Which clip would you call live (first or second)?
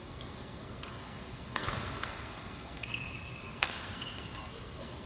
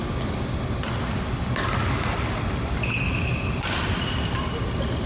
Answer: second